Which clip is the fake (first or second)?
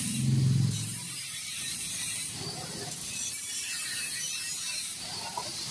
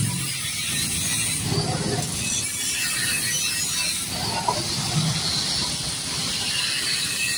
first